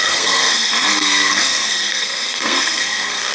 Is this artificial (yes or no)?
yes